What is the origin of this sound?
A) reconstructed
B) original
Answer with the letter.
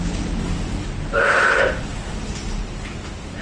B